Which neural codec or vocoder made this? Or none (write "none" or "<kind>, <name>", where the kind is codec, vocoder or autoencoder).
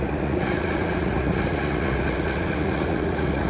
vocoder, Vocos